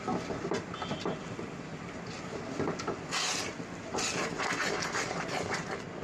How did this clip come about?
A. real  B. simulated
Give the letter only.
A